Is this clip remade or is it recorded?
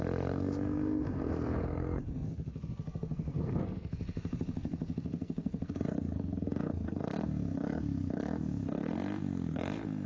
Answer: remade